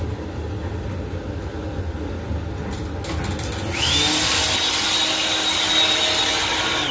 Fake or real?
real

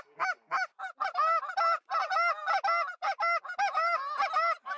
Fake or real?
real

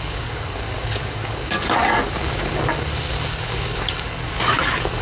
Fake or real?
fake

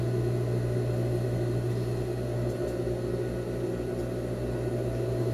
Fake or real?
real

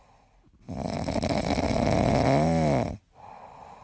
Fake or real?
real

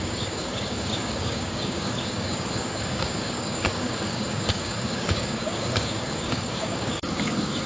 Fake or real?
fake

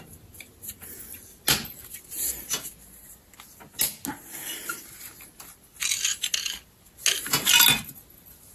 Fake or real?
real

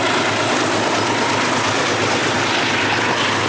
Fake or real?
real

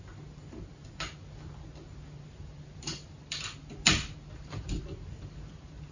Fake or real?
real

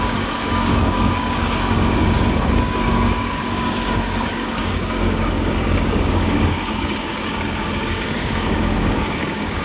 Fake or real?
fake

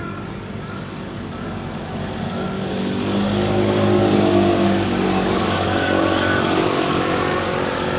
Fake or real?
fake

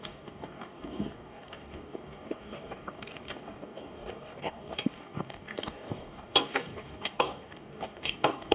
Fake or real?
fake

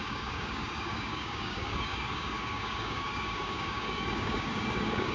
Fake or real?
fake